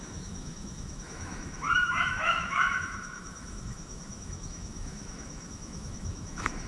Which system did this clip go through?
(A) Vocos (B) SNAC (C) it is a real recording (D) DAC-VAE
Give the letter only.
D